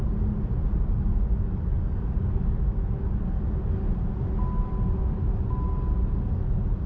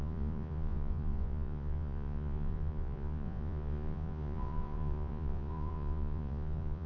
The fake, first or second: second